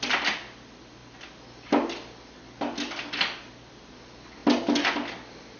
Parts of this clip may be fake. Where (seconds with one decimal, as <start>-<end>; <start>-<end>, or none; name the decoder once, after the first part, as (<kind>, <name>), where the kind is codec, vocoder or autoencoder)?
none